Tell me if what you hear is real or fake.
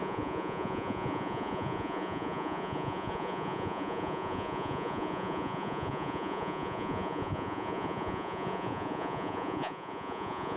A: fake